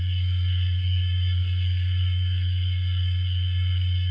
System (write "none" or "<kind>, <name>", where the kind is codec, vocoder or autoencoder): codec, SNAC